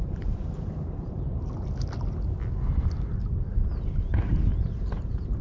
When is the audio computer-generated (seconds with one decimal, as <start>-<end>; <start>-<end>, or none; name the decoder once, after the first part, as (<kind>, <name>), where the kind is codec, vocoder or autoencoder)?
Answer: 0.0-1.3 (vocoder, BigVGAN v2); 4.5-5.4